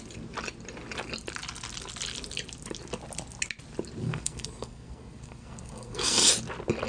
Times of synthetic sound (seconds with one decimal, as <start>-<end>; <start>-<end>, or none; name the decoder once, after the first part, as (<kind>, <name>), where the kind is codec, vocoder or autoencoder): 4.0-6.3 (codec, SNAC)